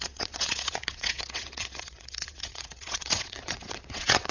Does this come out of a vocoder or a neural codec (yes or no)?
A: yes